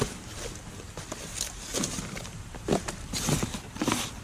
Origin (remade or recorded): recorded